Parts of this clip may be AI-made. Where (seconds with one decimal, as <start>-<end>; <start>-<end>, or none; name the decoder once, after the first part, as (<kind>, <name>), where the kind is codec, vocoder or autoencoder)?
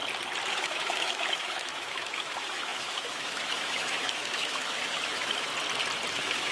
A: 0.5-5.5 (autoencoder, DAC-VAE); 6.1-6.5